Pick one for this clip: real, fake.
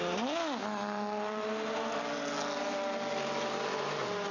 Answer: real